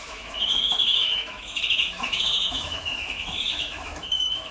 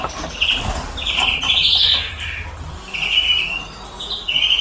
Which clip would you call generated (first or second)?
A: first